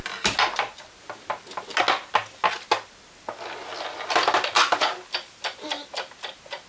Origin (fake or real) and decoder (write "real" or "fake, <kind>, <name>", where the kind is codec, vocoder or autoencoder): real